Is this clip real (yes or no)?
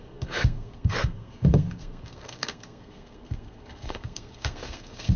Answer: no